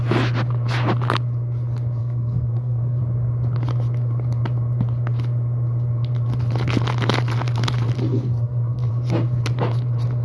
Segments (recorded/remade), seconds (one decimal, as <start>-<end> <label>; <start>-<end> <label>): 0.0-2.0 recorded; 2.0-3.0 remade; 3.0-8.1 recorded; 8.1-8.9 remade; 8.9-10.2 recorded